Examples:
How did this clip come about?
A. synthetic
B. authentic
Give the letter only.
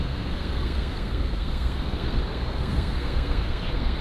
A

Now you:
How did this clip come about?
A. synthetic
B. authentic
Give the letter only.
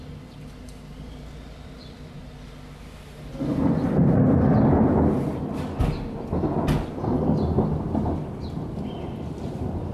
B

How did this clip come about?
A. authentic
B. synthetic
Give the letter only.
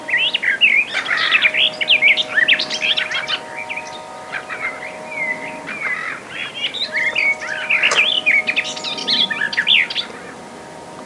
A